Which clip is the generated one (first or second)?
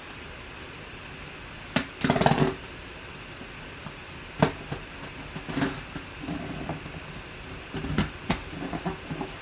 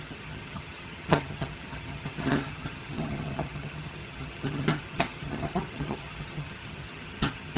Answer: second